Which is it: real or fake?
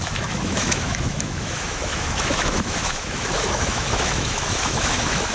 fake